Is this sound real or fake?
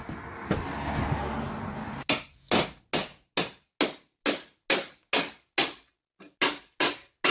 real